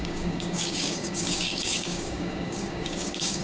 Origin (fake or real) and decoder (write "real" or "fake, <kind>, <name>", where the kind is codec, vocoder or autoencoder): fake, codec, DAC